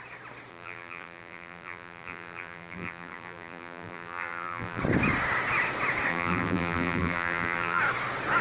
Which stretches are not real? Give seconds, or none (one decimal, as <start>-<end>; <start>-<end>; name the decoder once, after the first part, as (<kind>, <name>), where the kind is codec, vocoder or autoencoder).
0.5-4.8 (vocoder, BigVGAN v2); 6.1-7.8